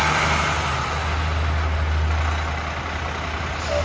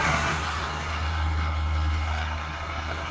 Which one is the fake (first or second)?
second